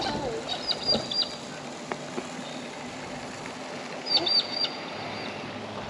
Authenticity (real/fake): real